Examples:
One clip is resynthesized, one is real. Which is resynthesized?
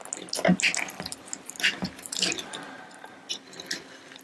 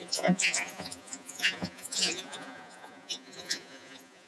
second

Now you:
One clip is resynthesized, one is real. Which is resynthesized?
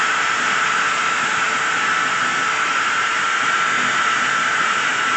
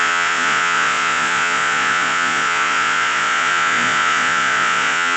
second